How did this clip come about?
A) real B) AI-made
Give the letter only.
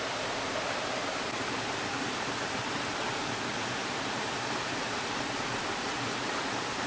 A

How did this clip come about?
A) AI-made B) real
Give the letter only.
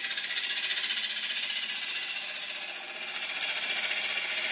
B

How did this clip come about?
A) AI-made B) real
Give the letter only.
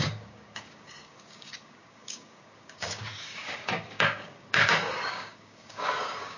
A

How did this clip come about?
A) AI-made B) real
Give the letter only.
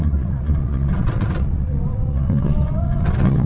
A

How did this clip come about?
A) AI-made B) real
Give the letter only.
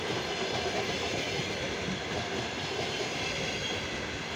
B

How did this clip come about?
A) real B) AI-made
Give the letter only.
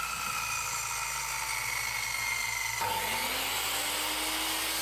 A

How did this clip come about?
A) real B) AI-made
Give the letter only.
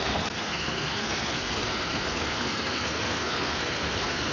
B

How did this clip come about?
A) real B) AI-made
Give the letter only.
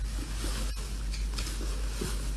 A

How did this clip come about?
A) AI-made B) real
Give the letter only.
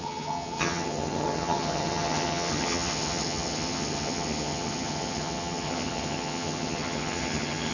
A